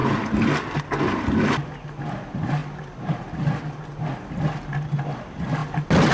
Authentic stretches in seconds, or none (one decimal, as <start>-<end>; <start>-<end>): 0.8-6.1